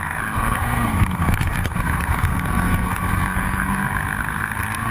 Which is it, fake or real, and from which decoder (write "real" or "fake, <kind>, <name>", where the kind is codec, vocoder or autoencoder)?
fake, codec, SNAC